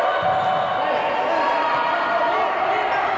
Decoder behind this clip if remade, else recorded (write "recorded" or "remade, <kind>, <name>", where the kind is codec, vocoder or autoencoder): recorded